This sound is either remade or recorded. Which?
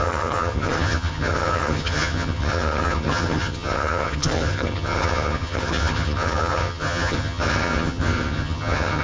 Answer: remade